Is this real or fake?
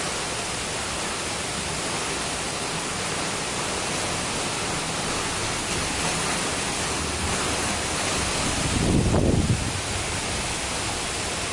real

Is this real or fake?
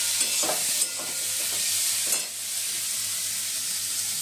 real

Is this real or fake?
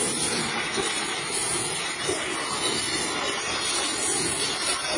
real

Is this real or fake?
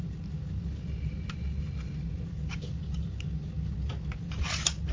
real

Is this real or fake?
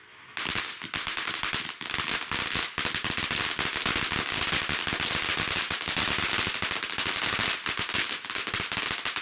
real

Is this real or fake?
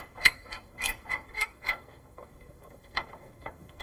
fake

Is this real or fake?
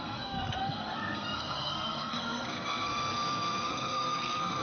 fake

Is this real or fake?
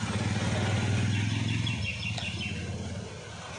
real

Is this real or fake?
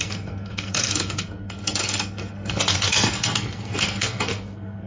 fake